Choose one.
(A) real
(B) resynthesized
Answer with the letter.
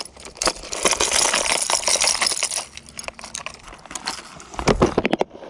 A